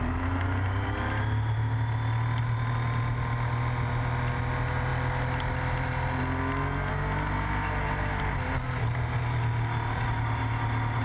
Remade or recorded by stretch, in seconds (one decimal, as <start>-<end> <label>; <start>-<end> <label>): 0.0-11.0 recorded